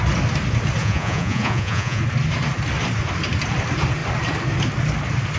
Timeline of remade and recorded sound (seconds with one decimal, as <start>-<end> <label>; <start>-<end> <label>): 0.0-0.8 recorded; 0.8-2.0 remade; 2.0-5.4 recorded